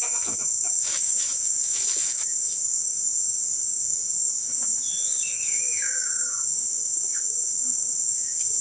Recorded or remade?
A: remade